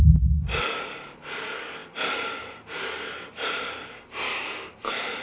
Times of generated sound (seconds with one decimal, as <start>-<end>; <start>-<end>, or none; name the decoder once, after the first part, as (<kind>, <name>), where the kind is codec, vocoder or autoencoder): none